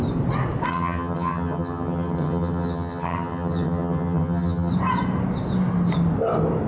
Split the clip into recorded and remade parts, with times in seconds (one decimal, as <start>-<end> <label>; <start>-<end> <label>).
0.0-0.7 recorded; 0.7-4.7 remade; 4.7-6.7 recorded